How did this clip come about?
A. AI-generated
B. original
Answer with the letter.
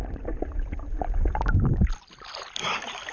B